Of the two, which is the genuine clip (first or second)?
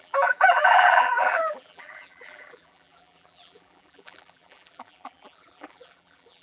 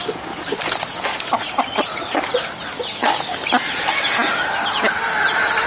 second